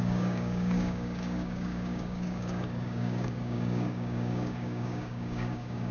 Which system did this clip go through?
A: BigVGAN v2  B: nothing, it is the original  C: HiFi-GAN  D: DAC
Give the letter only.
D